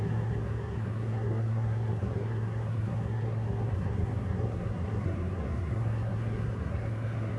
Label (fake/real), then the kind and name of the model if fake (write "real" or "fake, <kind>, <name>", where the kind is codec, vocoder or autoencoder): fake, codec, SNAC